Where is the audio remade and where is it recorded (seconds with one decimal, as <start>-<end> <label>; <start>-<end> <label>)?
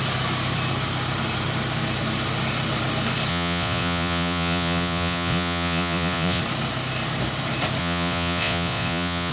0.0-3.3 recorded; 3.3-6.4 remade; 6.4-7.8 recorded; 7.8-9.3 remade